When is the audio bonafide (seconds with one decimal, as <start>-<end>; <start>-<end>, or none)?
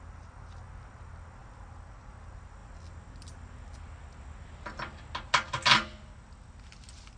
0.0-7.2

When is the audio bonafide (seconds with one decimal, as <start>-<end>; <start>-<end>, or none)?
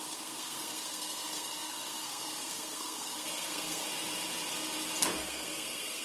3.8-5.2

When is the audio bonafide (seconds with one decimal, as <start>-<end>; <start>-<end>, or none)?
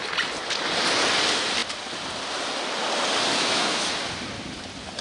0.0-3.3; 3.9-5.0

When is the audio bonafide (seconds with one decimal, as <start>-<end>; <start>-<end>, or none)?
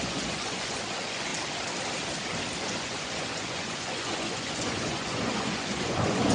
1.3-2.6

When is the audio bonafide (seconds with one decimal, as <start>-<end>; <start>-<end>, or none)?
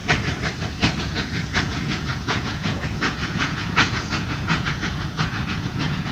0.0-1.0